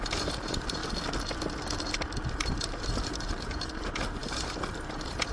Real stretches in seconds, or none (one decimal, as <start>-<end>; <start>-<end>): 0.8-2.3